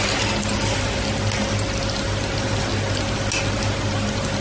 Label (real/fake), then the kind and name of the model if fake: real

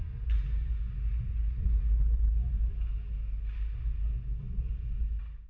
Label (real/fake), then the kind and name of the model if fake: real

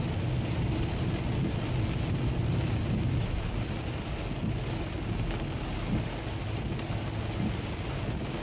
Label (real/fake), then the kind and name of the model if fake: real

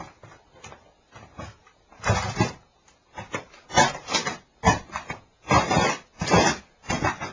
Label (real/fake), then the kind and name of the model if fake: real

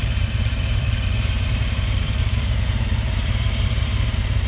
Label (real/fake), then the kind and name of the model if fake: fake, vocoder, BigVGAN v2